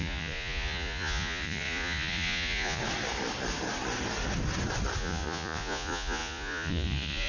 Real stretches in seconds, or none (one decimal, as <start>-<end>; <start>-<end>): 2.8-5.0